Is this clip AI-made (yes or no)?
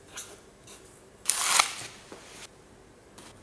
no